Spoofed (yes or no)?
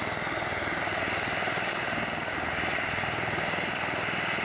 no